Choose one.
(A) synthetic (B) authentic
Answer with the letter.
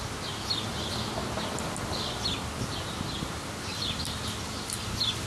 B